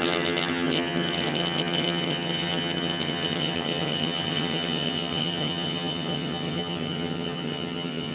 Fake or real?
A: fake